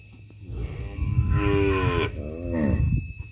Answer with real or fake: fake